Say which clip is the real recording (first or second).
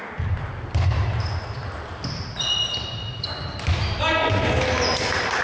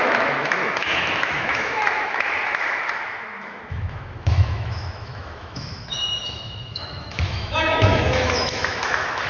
first